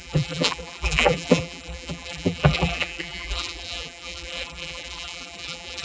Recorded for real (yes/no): no